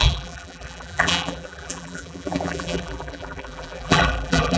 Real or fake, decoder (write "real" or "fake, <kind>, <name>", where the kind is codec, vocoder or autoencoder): fake, vocoder, BigVGAN v2